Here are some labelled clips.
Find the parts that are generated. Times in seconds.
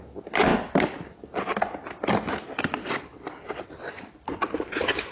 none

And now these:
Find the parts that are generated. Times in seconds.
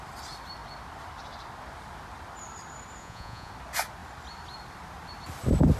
3.0-3.5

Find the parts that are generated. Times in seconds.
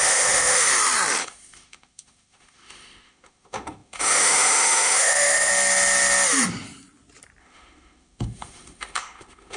0.0-0.7; 1.2-5.5; 7.4-9.6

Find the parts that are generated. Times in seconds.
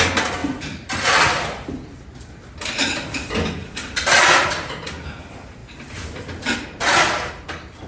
none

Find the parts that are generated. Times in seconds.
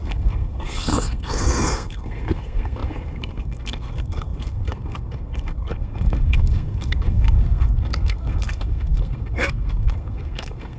0.0-10.8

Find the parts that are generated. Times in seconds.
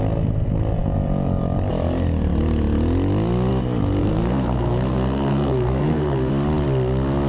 4.0-6.3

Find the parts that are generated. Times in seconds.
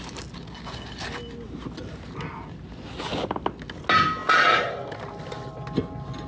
none